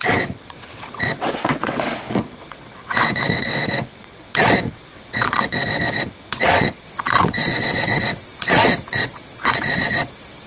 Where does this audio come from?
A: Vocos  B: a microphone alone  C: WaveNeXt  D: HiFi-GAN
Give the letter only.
C